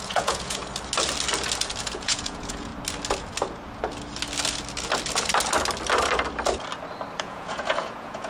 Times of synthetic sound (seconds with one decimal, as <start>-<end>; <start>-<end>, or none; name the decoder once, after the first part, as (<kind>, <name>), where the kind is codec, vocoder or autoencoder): 0.0-0.6 (vocoder, Vocos); 1.8-2.7; 7.2-8.3